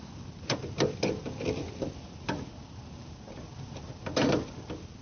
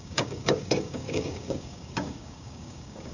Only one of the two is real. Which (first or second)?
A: first